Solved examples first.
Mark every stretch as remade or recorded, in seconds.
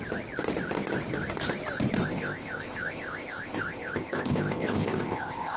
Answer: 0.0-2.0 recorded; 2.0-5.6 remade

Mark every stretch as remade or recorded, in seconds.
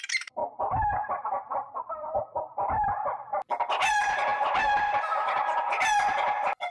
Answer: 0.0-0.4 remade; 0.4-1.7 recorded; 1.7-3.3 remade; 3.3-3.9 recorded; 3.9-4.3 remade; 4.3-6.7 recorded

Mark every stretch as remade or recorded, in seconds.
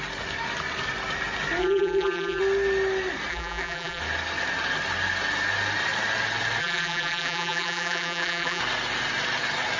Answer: 0.0-1.6 recorded; 1.6-2.4 remade; 2.4-3.3 recorded; 3.3-4.0 remade; 4.0-6.6 recorded; 6.6-8.6 remade; 8.6-9.8 recorded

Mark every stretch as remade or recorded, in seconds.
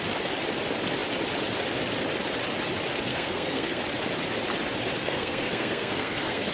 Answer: 0.0-3.1 recorded; 3.1-3.8 remade; 3.8-5.0 recorded; 5.0-6.5 remade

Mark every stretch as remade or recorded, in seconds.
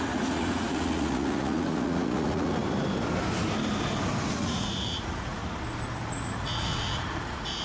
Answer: 0.0-2.6 remade; 2.6-4.2 recorded; 4.2-5.4 remade; 5.4-6.1 recorded; 6.1-7.6 remade